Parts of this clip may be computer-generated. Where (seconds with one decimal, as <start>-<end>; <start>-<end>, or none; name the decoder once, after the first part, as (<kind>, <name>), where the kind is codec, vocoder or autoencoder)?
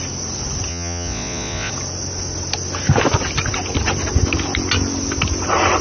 0.7-1.7 (vocoder, Vocos)